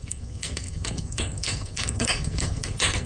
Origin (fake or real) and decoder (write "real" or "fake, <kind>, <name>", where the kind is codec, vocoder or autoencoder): fake, codec, SNAC